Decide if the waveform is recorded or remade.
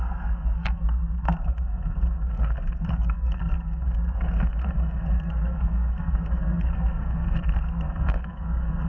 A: remade